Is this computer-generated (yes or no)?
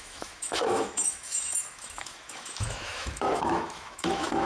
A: yes